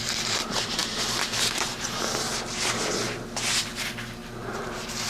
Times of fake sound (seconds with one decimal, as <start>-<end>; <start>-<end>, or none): 0.0-3.0; 3.6-5.1